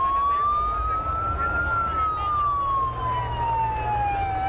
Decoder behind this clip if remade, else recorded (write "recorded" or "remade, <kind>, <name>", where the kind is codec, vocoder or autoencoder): recorded